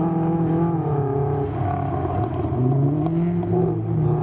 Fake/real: real